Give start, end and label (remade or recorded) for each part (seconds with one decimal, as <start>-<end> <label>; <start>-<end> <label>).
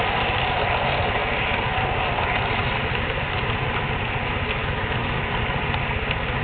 0.0-4.6 recorded; 4.6-5.3 remade; 5.3-6.4 recorded